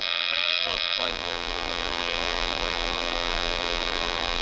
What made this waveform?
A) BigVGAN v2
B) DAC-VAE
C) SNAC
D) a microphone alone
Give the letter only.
A